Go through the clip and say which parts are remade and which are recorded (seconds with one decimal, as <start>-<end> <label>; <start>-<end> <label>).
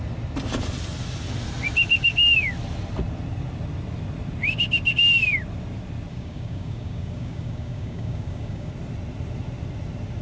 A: 0.0-6.1 recorded; 6.1-8.7 remade; 8.7-10.2 recorded